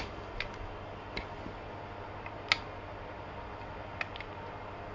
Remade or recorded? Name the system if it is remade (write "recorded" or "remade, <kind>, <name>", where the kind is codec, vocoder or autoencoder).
recorded